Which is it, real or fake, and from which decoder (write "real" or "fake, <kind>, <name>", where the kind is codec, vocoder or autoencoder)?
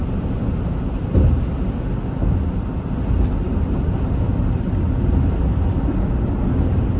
real